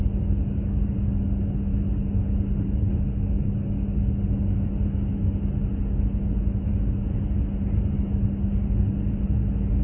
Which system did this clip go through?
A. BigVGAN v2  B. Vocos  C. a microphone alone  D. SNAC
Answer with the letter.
C